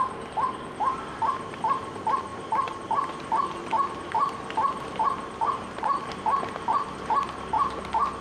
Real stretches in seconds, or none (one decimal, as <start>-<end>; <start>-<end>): 0.0-8.2